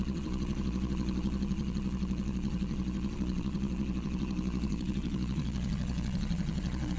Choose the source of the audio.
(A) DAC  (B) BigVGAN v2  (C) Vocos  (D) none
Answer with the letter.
C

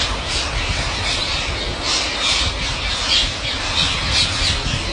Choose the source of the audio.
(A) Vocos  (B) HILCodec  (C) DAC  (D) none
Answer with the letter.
D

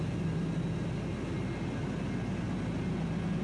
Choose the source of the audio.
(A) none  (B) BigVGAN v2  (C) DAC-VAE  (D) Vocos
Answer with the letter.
A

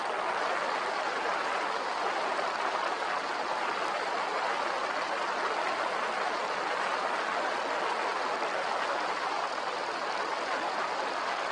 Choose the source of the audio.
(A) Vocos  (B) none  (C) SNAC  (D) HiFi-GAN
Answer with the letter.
B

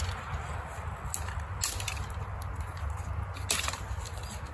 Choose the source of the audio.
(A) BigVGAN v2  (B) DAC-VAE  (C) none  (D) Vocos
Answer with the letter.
C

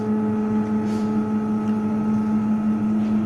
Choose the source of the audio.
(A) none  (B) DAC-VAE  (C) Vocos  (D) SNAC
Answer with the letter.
A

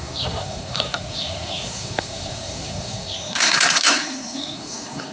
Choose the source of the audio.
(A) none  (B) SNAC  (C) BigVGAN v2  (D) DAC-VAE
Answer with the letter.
B